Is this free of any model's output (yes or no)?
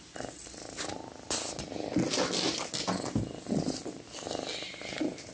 yes